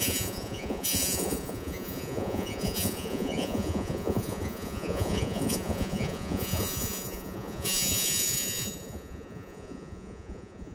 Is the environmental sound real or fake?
fake